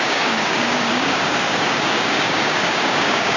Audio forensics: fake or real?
fake